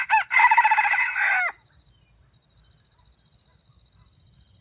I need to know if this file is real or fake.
real